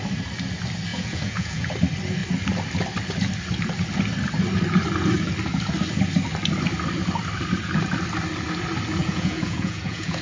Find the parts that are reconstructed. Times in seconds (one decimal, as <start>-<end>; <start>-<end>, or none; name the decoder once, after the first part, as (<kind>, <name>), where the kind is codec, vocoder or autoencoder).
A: 0.9-1.7 (vocoder, Vocos); 9.0-10.2